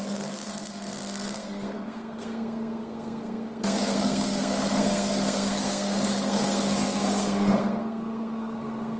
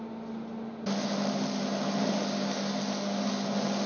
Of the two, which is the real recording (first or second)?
second